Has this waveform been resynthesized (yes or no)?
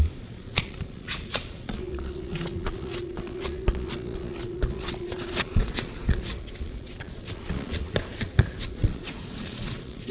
yes